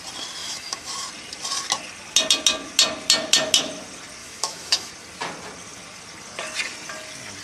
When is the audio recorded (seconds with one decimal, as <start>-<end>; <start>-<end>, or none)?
0.0-0.4; 0.9-4.2; 4.9-7.4